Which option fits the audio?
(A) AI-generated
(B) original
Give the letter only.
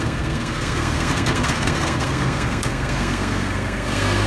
A